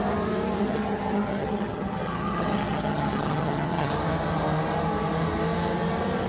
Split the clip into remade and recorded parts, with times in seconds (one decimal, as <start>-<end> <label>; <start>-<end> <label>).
0.0-0.6 recorded; 0.6-3.9 remade; 3.9-6.3 recorded